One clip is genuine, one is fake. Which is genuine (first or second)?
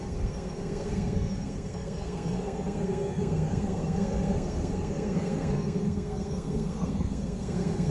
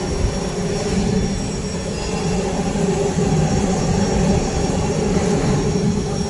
second